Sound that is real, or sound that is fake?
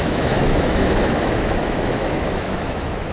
fake